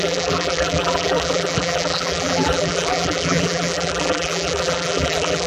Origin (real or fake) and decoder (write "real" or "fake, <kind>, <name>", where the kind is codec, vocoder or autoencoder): fake, vocoder, BigVGAN v2